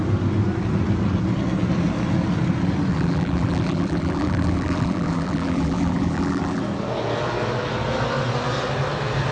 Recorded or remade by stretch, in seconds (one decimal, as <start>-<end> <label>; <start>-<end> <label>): 0.0-2.9 recorded; 2.9-6.6 remade; 6.6-9.3 recorded